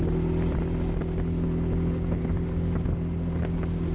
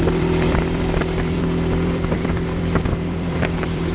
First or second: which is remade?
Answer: second